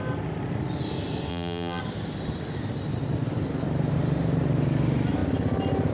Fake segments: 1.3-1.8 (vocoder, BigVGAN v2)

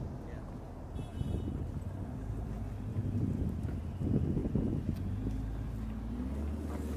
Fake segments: 2.9-4.0 (vocoder, BigVGAN v2)

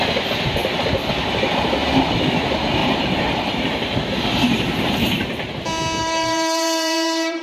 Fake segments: 2.8-5.6 (vocoder, BigVGAN v2); 6.0-7.4

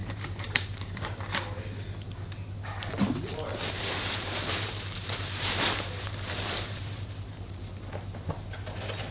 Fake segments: 0.0-1.6 (vocoder, BigVGAN v2); 3.5-7.6